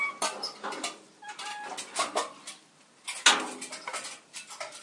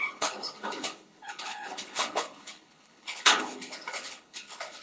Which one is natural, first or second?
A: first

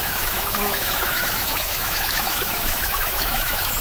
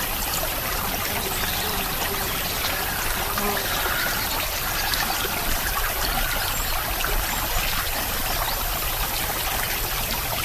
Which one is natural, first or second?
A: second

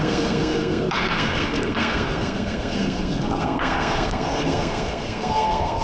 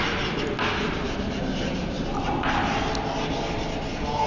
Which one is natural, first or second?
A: second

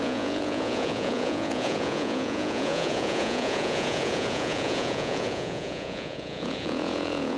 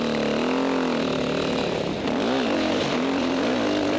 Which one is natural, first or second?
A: second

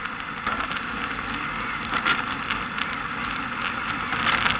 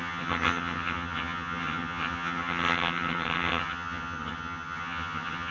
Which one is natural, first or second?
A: first